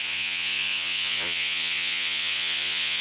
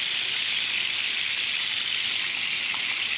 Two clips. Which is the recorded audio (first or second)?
second